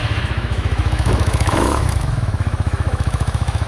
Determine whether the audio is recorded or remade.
remade